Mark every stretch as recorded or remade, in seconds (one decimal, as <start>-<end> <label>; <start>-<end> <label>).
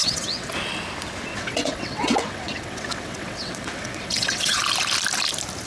0.0-0.5 remade; 0.5-1.3 recorded; 1.3-4.6 remade; 4.6-5.7 recorded